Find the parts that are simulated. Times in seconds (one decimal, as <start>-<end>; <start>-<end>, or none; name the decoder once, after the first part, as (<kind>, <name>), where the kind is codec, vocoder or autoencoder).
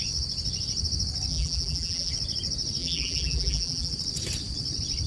1.3-2.1 (vocoder, BigVGAN v2); 2.8-3.9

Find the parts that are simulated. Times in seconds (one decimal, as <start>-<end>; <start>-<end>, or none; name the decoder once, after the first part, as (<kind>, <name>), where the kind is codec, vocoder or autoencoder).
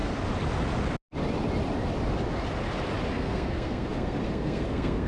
3.1-5.1 (codec, SNAC)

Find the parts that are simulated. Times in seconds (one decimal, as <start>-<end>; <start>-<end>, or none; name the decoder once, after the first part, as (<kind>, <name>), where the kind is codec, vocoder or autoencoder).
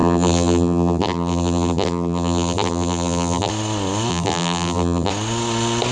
0.0-3.5 (vocoder, BigVGAN v2); 4.1-5.1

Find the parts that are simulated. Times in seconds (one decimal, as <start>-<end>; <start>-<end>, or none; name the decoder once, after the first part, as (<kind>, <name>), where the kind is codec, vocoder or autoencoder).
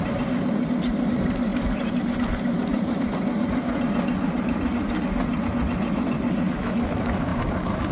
2.7-4.7 (vocoder, BigVGAN v2); 7.3-7.9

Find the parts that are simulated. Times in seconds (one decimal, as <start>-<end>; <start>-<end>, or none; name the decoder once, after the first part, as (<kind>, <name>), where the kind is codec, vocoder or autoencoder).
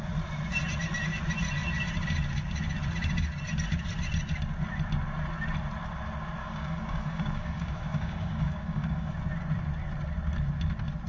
6.4-9.1 (codec, DAC)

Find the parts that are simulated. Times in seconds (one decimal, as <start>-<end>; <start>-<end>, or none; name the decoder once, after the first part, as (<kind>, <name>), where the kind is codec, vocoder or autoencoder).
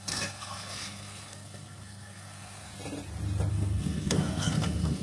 0.0-2.7 (codec, SNAC); 3.5-5.0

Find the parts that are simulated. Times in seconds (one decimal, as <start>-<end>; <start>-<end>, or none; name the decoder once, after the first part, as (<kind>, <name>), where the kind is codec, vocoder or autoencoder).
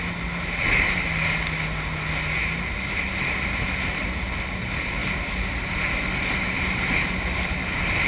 none